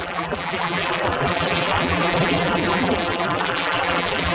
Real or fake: fake